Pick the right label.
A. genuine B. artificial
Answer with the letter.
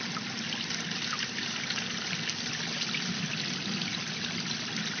A